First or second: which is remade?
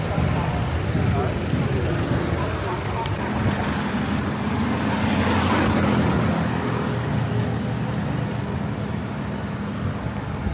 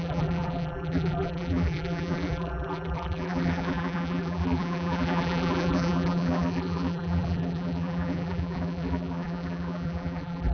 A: second